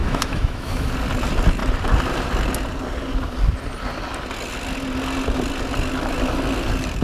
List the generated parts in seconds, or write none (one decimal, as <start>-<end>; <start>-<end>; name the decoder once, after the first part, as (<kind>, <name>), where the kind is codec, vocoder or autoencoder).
0.0-0.9 (autoencoder, DAC-VAE)

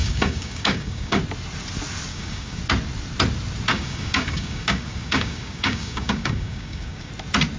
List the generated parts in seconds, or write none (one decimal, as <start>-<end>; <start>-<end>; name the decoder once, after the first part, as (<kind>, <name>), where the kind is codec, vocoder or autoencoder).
0.0-1.2 (codec, DAC); 2.1-2.6; 3.7-7.1

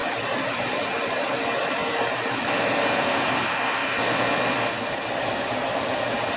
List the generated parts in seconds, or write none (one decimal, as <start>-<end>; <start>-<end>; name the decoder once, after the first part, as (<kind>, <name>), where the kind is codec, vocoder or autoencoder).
none

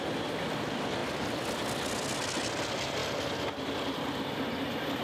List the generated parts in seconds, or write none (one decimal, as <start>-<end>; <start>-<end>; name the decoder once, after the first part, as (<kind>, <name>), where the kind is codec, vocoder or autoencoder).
0.0-1.0 (vocoder, BigVGAN v2); 2.4-3.0; 3.9-5.0

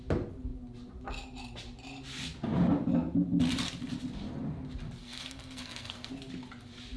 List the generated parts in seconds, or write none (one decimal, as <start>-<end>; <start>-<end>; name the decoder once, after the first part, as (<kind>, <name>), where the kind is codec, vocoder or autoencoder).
5.0-6.1 (codec, SNAC)

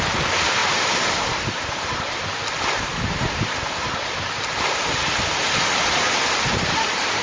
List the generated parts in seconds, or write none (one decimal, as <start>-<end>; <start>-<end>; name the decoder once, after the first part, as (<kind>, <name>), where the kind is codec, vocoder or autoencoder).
0.6-2.3 (vocoder, BigVGAN v2); 2.9-7.2